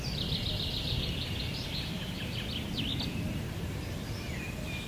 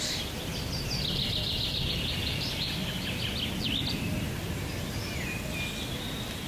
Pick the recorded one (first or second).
second